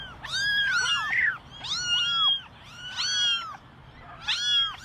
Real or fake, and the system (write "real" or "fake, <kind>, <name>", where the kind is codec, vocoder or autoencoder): real